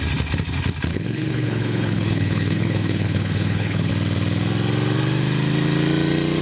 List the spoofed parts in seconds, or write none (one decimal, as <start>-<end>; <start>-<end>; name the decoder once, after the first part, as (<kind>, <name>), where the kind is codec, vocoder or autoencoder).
0.9-3.9 (codec, HILCodec)